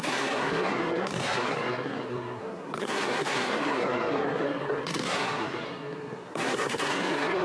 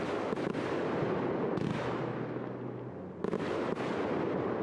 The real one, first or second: second